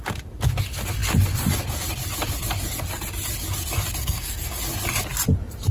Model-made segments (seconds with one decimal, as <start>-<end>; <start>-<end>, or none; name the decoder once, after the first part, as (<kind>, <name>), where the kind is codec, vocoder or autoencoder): 4.0-4.6 (codec, SNAC)